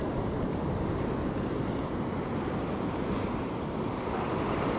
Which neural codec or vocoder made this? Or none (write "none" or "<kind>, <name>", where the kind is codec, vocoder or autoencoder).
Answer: vocoder, BigVGAN v2